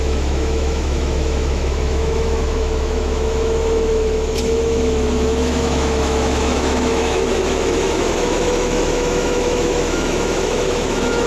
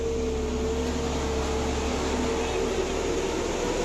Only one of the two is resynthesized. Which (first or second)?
first